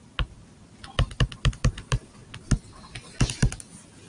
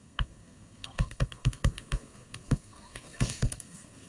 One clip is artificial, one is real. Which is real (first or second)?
first